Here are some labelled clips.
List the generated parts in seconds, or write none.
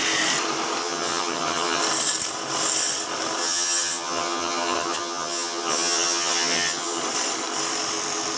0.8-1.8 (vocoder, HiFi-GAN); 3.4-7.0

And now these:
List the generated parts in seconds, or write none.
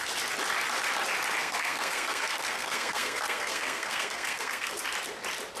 1.4-4.8 (codec, SNAC)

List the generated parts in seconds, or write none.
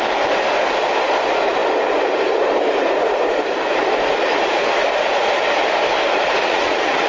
6.4-7.1 (vocoder, Vocos)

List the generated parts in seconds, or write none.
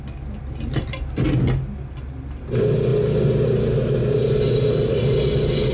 none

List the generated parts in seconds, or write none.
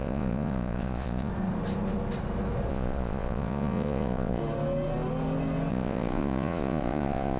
0.0-1.3 (vocoder, Vocos); 2.7-4.4; 5.7-7.4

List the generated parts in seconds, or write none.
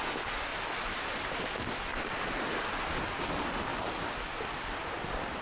0.5-1.4 (vocoder, BigVGAN v2)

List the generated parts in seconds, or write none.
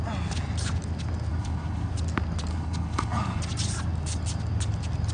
1.3-1.9 (codec, HILCodec); 2.5-3.4